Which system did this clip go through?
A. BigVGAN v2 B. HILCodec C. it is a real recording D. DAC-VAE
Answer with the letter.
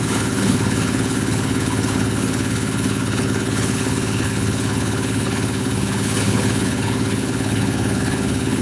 B